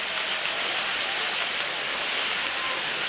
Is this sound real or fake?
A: real